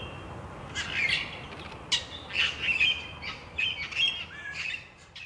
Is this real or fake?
real